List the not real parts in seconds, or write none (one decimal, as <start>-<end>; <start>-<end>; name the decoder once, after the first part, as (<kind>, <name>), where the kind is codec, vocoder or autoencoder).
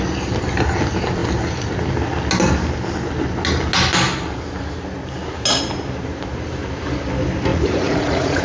7.5-8.4 (vocoder, Vocos)